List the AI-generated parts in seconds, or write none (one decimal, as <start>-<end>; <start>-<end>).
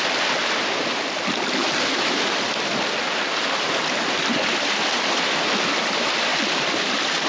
0.0-7.3